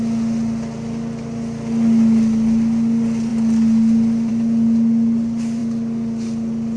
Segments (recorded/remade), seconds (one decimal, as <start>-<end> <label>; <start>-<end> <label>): 0.0-6.8 recorded